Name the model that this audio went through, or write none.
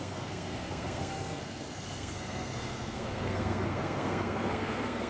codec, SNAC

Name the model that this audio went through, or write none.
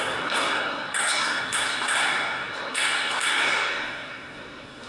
codec, SNAC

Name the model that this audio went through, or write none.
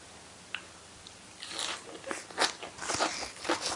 none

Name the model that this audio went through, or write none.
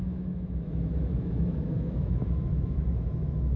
autoencoder, DAC-VAE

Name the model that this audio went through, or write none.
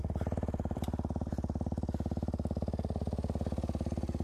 vocoder, BigVGAN v2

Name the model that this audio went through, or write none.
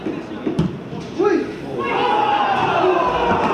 none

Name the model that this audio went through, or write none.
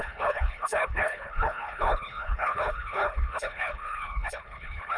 codec, HILCodec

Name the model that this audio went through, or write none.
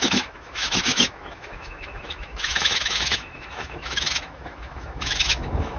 autoencoder, DAC-VAE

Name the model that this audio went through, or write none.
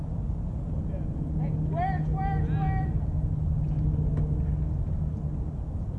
none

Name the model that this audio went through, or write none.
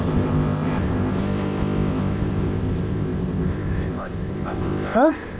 codec, ZipCodec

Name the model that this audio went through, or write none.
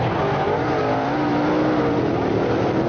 none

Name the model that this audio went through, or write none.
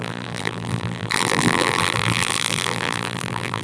vocoder, BigVGAN v2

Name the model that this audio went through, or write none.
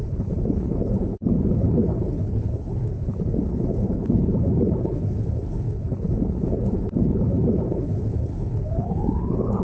codec, HILCodec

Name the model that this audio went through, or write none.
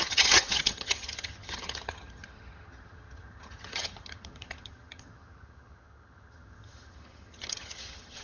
vocoder, HiFi-GAN